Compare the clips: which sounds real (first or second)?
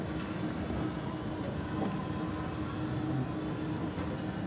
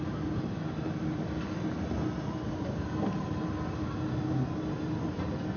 first